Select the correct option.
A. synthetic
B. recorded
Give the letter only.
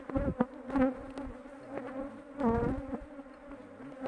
B